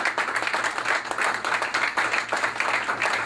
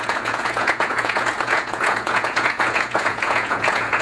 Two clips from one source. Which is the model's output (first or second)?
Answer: second